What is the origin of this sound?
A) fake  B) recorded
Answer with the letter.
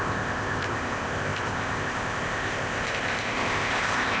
A